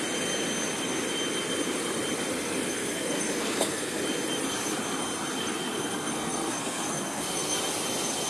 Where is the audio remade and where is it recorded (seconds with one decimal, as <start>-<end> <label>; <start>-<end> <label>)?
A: 0.0-2.3 recorded; 2.3-4.0 remade; 4.0-5.4 recorded; 5.4-7.6 remade; 7.6-8.3 recorded